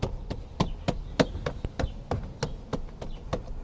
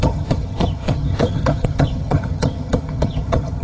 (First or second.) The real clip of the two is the first